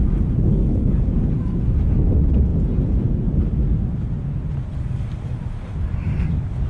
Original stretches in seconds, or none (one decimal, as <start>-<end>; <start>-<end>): 0.0-0.5; 1.0-6.7